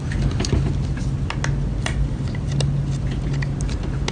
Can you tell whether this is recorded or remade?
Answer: recorded